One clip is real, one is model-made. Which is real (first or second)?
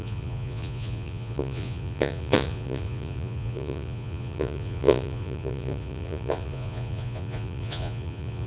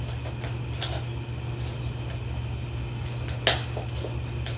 second